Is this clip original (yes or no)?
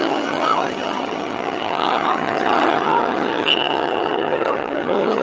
no